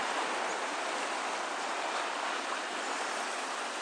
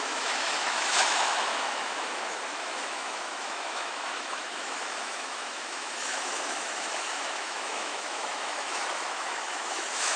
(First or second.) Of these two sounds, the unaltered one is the first